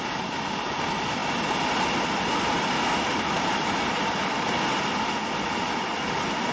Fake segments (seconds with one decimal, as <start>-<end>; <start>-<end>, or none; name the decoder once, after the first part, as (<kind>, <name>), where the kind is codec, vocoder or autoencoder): none